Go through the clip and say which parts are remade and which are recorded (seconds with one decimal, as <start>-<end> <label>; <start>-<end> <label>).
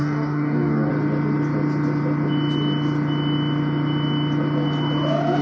0.0-0.9 remade; 0.9-5.4 recorded